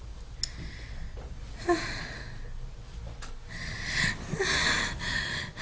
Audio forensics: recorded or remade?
recorded